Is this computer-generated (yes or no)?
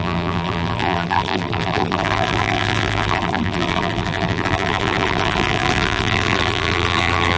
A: yes